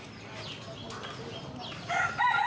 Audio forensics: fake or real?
real